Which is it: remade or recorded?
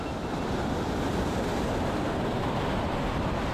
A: recorded